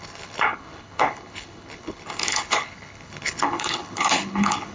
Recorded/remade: remade